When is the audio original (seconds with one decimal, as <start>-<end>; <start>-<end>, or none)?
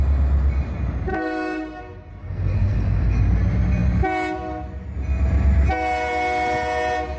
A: 0.0-1.1; 1.8-2.2; 3.2-7.2